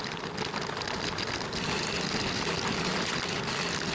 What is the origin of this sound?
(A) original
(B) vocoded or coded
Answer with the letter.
A